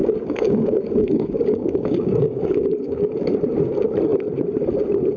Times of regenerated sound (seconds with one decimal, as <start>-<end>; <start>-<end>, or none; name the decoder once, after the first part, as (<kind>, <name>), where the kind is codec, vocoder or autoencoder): 0.0-3.1 (codec, DAC)